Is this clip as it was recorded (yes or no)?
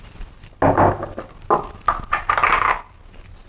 yes